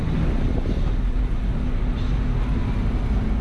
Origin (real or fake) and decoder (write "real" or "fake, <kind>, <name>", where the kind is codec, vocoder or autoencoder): real